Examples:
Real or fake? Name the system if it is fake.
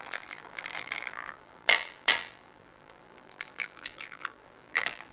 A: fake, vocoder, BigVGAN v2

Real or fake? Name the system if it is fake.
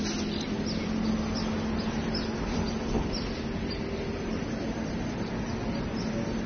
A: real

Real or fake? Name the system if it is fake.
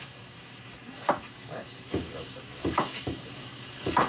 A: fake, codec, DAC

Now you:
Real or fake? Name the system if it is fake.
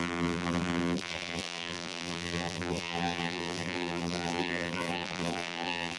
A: fake, vocoder, BigVGAN v2